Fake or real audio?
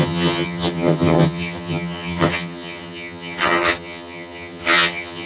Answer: fake